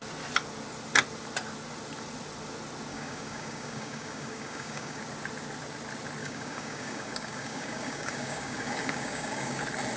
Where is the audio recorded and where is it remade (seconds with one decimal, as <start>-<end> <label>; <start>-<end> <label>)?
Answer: 0.0-2.9 recorded; 2.9-5.0 remade; 5.0-6.2 recorded; 6.2-9.6 remade; 9.6-10.0 recorded